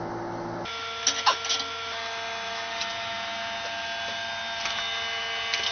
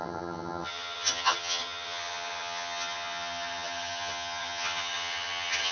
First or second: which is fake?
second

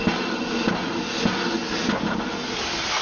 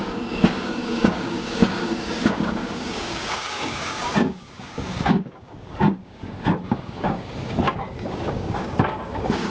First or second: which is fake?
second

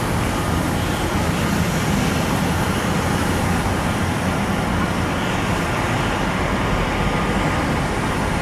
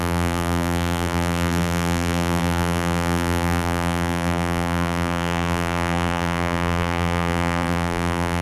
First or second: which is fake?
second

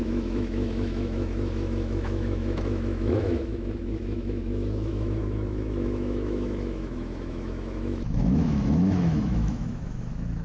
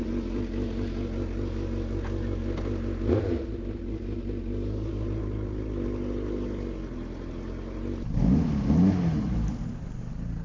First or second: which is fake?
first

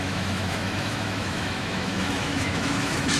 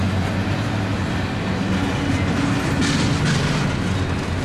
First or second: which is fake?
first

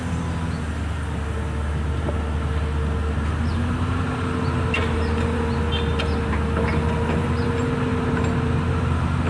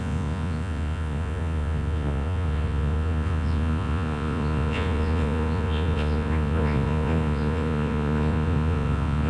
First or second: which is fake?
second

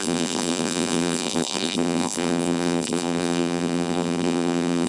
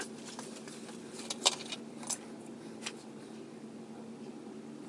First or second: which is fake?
first